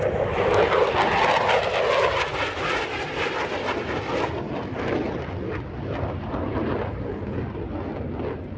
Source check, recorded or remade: recorded